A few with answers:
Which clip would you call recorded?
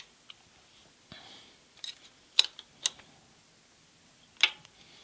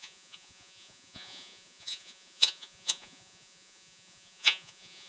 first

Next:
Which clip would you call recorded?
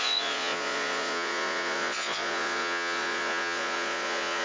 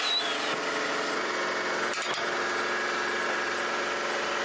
second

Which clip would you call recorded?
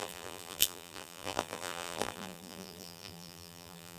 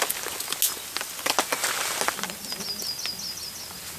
second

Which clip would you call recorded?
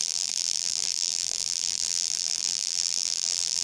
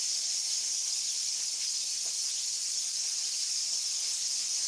second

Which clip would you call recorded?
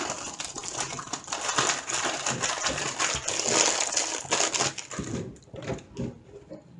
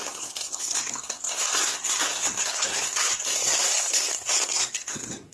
first